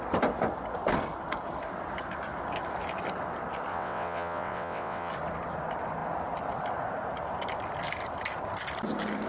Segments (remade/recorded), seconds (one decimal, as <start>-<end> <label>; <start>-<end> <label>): 0.0-3.7 recorded; 3.7-5.1 remade; 5.1-9.3 recorded